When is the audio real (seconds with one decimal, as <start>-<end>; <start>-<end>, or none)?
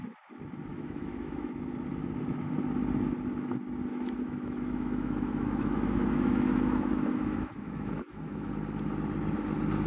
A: 0.0-0.7; 1.5-3.9; 8.5-9.9